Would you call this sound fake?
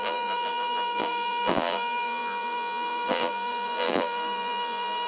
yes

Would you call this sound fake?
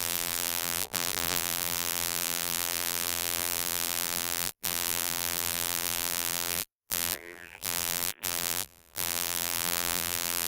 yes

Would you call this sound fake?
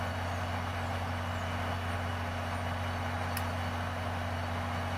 no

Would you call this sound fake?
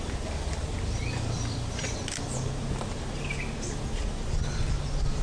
yes